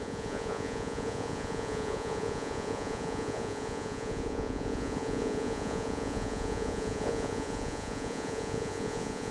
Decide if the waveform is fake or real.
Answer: fake